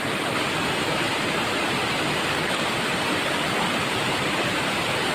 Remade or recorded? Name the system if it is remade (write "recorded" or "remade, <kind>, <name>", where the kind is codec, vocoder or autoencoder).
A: remade, vocoder, BigVGAN v2